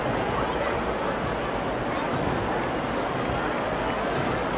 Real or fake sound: real